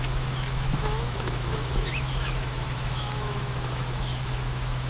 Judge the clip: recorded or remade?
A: remade